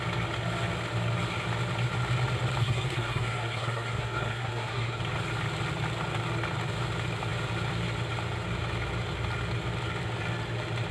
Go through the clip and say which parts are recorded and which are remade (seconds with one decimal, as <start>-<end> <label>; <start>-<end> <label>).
0.0-2.6 recorded; 2.6-5.0 remade; 5.0-10.9 recorded